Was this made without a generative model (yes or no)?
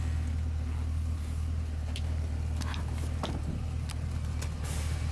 yes